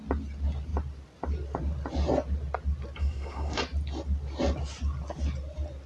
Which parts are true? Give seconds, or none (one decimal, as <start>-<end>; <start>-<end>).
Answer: 0.0-3.0; 3.6-5.9